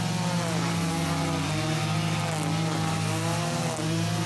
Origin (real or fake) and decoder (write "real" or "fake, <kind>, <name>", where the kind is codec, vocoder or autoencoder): real